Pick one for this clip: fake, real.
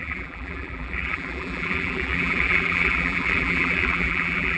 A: fake